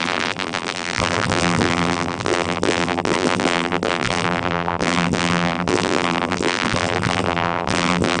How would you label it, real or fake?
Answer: fake